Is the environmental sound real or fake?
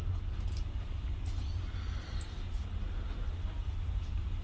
real